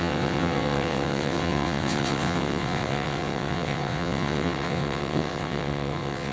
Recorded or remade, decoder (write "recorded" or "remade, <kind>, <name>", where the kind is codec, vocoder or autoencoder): remade, vocoder, WaveNeXt